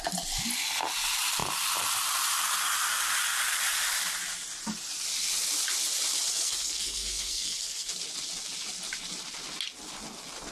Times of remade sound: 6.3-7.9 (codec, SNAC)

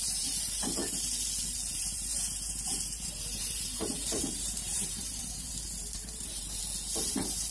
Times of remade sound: 0.0-0.8 (vocoder, BigVGAN v2); 1.7-6.6; 7.1-7.5

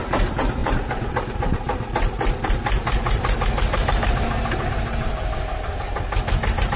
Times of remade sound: 0.6-4.7 (vocoder, BigVGAN v2)

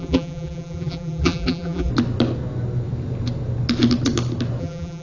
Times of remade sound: 0.0-1.9 (vocoder, BigVGAN v2); 4.6-5.0

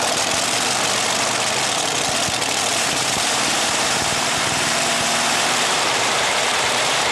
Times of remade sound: 2.7-7.1 (vocoder, BigVGAN v2)

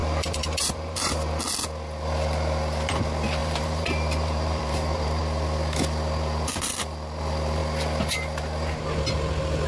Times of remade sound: 0.0-1.1 (vocoder, BigVGAN v2); 3.4-5.2

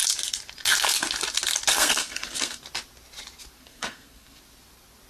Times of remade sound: 1.7-2.6 (codec, SNAC); 3.6-4.4

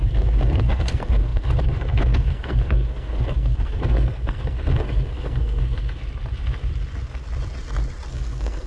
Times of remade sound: 0.0-6.0 (codec, SNAC); 8.1-8.7